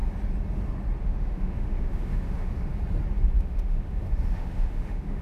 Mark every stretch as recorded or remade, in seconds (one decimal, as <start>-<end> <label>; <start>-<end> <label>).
0.0-1.0 recorded; 1.0-2.7 remade; 2.7-3.4 recorded; 3.4-5.2 remade